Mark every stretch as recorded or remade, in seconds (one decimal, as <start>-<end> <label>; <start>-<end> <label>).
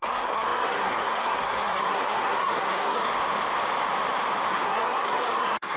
0.0-3.1 remade; 3.1-4.5 recorded; 4.5-5.8 remade